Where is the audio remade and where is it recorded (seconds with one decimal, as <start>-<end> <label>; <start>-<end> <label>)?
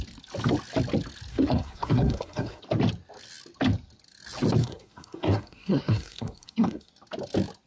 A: 0.0-1.3 recorded; 1.3-2.6 remade; 2.6-4.6 recorded; 4.6-6.9 remade; 6.9-7.7 recorded